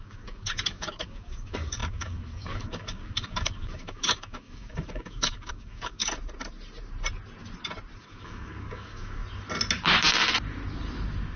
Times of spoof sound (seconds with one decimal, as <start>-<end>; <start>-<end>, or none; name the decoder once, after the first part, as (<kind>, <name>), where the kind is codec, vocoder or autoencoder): 0.0-6.0 (codec, DAC); 8.0-9.2

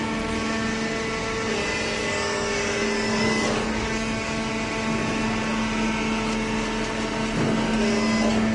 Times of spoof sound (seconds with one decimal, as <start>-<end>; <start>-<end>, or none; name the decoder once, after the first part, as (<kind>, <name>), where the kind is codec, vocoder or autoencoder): 2.0-4.5 (codec, DAC)